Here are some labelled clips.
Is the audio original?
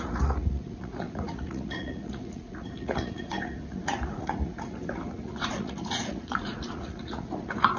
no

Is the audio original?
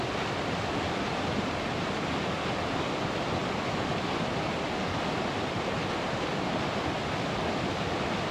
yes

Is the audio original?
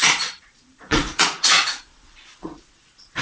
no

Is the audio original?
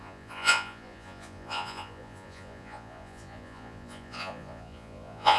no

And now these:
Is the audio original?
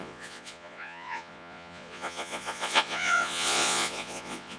no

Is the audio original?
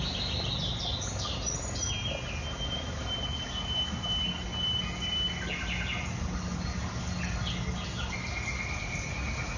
yes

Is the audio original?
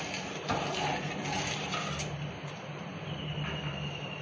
yes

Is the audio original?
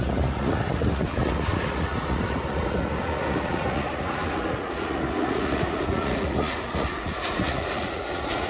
no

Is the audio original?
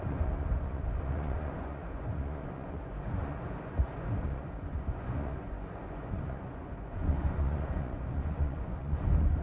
no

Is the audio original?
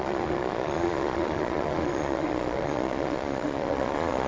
no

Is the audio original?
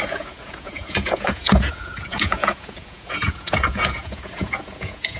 no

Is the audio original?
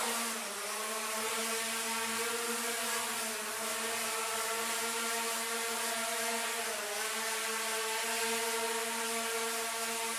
yes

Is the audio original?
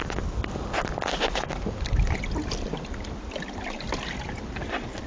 yes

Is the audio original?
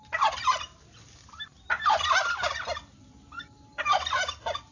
yes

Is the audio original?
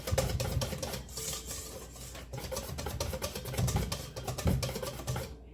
yes